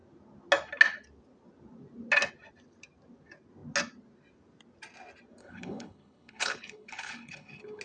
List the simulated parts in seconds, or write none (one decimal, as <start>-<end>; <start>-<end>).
5.4-7.8